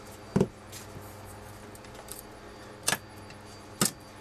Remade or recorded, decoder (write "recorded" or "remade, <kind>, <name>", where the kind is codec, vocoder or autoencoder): recorded